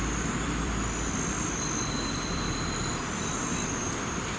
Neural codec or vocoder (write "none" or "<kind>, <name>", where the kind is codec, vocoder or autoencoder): vocoder, BigVGAN v2